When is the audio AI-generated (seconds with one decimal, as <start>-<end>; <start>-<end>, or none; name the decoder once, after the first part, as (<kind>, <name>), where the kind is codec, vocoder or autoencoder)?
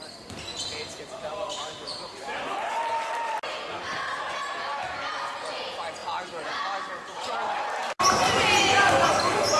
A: 1.3-2.7 (vocoder, BigVGAN v2)